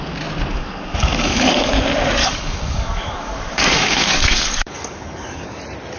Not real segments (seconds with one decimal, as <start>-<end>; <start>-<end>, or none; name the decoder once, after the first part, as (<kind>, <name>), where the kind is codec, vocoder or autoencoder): 0.5-1.7 (codec, DAC); 2.2-5.6